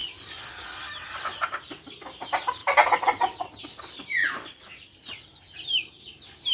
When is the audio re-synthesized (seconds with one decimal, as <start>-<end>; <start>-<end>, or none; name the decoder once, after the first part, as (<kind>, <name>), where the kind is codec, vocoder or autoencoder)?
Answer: 0.0-0.5 (vocoder, BigVGAN v2)